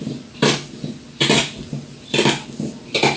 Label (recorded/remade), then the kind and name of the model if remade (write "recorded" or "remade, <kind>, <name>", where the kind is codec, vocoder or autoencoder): recorded